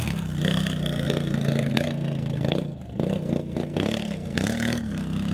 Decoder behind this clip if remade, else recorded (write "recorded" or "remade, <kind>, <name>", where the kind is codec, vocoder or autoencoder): remade, codec, SNAC